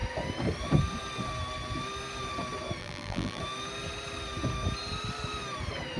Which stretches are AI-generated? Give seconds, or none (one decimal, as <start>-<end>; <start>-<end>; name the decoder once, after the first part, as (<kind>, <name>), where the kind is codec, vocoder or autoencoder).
2.8-3.4 (vocoder, BigVGAN v2)